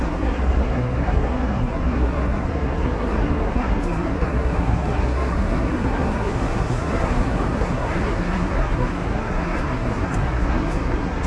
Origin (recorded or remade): remade